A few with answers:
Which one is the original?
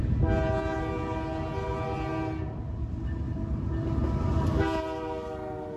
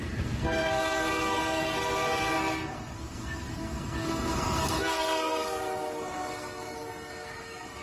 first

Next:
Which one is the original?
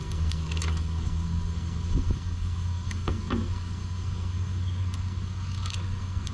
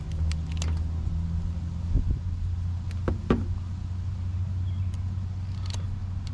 second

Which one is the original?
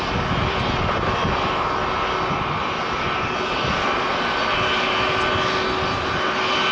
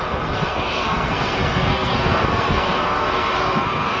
first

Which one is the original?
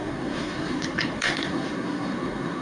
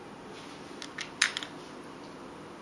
second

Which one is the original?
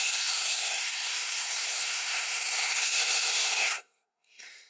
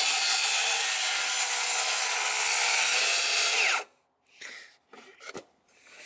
second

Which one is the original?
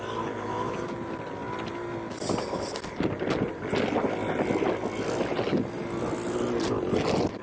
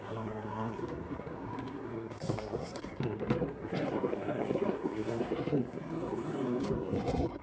first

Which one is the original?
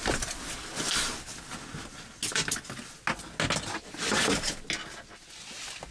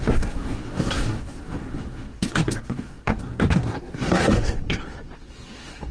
first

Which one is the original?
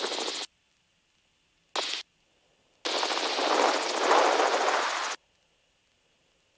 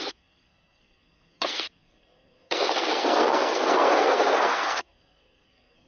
first